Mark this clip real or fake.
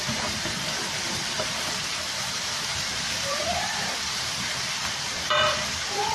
fake